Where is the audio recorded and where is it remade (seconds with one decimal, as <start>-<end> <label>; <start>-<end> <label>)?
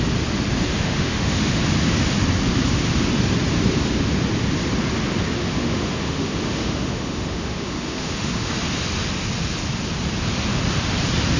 0.0-0.7 recorded; 0.7-1.6 remade; 1.6-5.4 recorded; 5.4-8.5 remade; 8.5-11.4 recorded